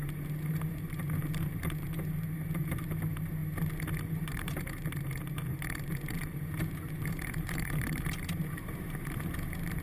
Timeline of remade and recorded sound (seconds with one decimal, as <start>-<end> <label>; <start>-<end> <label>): 0.0-3.4 remade; 3.4-4.0 recorded; 4.0-9.8 remade